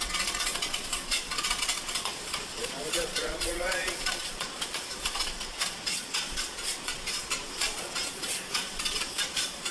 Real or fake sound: fake